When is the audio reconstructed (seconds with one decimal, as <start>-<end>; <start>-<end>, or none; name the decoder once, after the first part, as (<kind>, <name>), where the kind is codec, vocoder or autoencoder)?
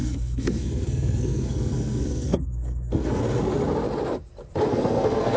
0.0-3.2 (codec, SNAC); 4.7-5.4